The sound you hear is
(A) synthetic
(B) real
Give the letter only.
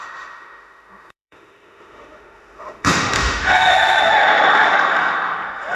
A